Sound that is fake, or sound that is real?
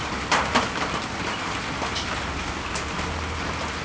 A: real